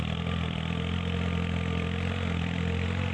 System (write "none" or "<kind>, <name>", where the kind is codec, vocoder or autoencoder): vocoder, BigVGAN v2